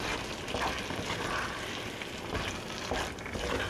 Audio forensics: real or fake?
real